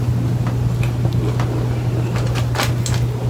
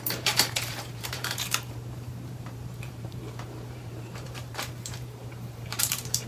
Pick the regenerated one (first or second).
second